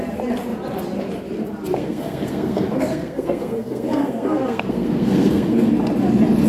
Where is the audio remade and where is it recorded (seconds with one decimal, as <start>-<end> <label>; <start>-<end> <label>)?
0.0-1.8 recorded; 1.8-5.7 remade; 5.7-6.5 recorded